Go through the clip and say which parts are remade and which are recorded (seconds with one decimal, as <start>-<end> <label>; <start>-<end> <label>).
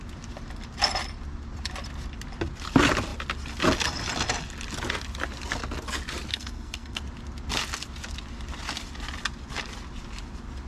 0.0-6.3 recorded; 6.3-7.0 remade; 7.0-10.7 recorded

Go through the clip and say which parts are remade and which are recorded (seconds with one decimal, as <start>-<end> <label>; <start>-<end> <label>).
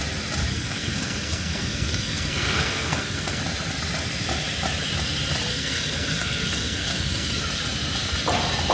0.0-0.5 recorded; 0.5-3.4 remade; 3.4-5.5 recorded; 5.5-7.4 remade; 7.4-8.7 recorded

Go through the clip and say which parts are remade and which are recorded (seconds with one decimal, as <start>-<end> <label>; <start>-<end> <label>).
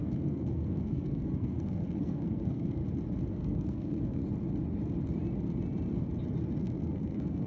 0.0-2.8 remade; 2.8-3.3 recorded; 3.3-4.2 remade; 4.2-6.6 recorded; 6.6-7.5 remade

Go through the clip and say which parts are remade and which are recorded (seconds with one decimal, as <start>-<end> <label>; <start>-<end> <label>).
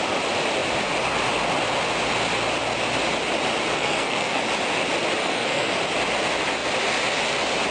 0.0-3.7 recorded; 3.7-4.4 remade; 4.4-5.2 recorded; 5.2-5.8 remade; 5.8-7.7 recorded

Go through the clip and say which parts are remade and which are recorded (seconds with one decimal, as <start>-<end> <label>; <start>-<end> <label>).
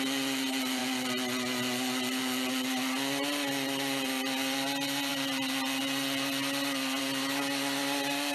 0.0-8.3 recorded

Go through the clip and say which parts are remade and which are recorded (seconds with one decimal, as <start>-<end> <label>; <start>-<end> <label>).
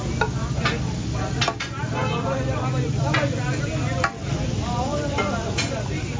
0.0-6.2 recorded